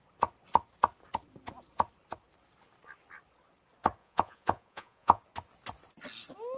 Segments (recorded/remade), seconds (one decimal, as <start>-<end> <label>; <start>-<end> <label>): 0.0-4.0 recorded; 4.0-5.2 remade; 5.2-6.6 recorded